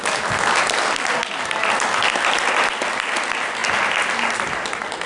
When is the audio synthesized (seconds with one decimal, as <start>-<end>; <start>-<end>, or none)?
none